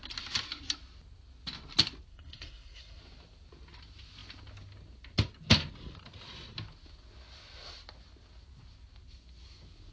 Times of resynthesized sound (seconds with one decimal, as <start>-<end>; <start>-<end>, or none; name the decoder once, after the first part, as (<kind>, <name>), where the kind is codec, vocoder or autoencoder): 2.1-3.0 (codec, SNAC)

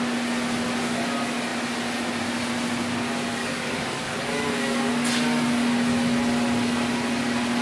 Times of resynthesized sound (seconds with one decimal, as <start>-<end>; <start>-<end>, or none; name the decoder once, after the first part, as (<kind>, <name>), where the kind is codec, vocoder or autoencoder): 3.4-4.9 (codec, DAC)

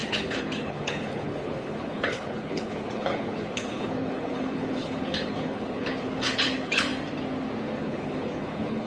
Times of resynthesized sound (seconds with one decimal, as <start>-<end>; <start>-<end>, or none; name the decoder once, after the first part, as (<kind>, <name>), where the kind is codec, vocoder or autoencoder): 0.0-6.9 (codec, HILCodec); 7.8-8.9

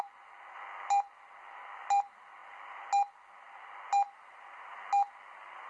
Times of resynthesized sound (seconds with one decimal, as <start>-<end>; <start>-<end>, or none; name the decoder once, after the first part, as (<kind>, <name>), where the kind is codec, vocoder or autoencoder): none

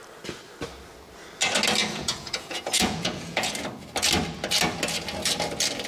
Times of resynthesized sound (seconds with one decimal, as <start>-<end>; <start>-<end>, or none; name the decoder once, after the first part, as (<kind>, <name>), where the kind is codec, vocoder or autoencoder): 1.8-3.5 (vocoder, Vocos)

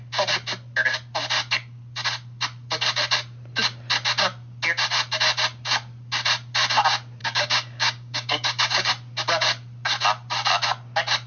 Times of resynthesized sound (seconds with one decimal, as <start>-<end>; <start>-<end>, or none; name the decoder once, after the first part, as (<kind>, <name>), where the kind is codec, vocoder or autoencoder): 7.2-8.9 (codec, DAC)

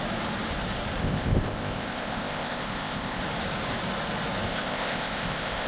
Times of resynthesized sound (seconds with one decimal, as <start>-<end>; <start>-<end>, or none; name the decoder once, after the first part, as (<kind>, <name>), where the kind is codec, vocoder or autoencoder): 1.0-3.2 (codec, ZipCodec); 4.5-5.7